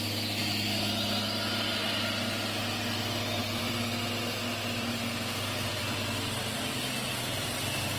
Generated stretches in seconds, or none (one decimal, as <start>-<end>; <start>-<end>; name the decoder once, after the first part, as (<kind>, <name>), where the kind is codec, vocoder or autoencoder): 3.4-4.2 (vocoder, BigVGAN v2); 5.7-8.0